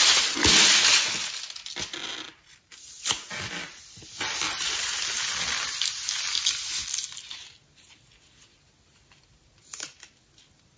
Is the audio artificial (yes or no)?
no